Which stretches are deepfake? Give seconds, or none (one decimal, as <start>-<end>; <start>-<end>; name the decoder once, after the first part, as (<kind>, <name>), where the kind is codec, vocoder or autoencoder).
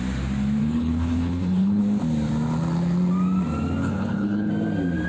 0.6-1.8 (codec, HILCodec); 3.8-4.5